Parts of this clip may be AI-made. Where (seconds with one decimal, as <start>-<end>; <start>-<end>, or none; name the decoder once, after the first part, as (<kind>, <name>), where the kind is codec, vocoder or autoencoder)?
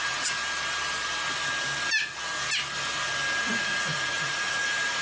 0.0-0.4 (vocoder, Vocos); 3.4-5.0